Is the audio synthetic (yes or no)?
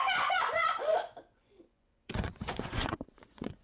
yes